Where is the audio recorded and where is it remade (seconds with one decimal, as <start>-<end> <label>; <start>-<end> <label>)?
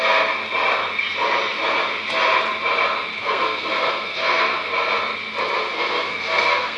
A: 0.0-0.4 remade; 0.4-3.2 recorded; 3.2-4.7 remade; 4.7-5.7 recorded; 5.7-6.8 remade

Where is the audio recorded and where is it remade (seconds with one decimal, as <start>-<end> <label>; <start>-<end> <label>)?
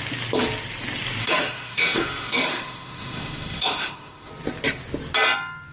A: 0.0-1.2 recorded; 1.2-4.3 remade; 4.3-5.7 recorded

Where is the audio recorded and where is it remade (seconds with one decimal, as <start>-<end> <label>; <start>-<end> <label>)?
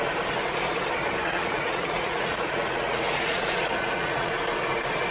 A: 0.0-1.2 recorded; 1.2-4.3 remade; 4.3-5.1 recorded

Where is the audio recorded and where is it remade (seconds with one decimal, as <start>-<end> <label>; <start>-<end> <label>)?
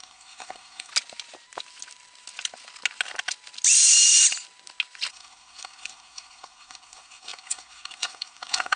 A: 0.0-0.9 remade; 0.9-5.1 recorded; 5.1-8.8 remade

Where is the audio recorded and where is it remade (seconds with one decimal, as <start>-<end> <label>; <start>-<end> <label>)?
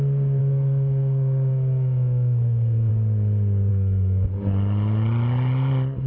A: 0.0-0.4 recorded; 0.4-2.9 remade; 2.9-3.7 recorded; 3.7-4.3 remade; 4.3-6.1 recorded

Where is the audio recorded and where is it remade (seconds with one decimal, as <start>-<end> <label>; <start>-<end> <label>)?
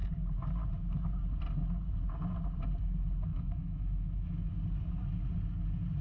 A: 0.0-3.3 recorded; 3.3-4.5 remade; 4.5-6.0 recorded